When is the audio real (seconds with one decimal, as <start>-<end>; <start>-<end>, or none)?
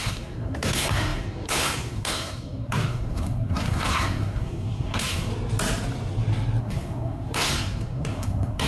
5.3-6.6